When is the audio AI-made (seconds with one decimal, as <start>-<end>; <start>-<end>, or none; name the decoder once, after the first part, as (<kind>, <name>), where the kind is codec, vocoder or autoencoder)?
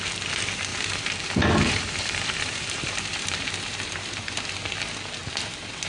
0.7-4.2 (vocoder, BigVGAN v2); 5.2-5.9